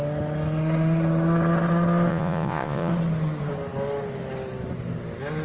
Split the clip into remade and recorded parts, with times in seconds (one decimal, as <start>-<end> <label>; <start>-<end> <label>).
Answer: 0.0-2.1 recorded; 2.1-2.9 remade; 2.9-5.4 recorded